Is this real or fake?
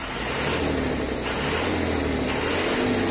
real